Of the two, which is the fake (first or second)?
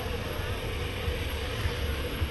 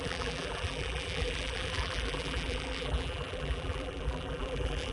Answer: second